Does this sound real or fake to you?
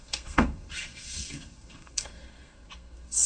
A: fake